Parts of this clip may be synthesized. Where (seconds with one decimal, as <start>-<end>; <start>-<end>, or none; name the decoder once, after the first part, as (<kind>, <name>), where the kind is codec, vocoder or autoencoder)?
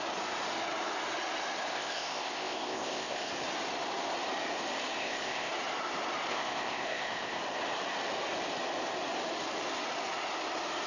1.7-3.3 (codec, ZipCodec); 5.0-5.5; 6.3-7.4